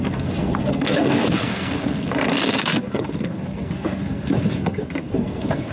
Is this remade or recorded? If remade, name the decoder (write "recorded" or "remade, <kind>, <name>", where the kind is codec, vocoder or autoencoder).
remade, codec, SNAC